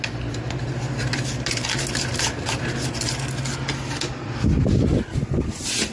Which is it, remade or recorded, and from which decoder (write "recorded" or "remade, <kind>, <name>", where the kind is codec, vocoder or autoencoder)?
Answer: recorded